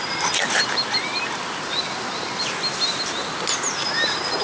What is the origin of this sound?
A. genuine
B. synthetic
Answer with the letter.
A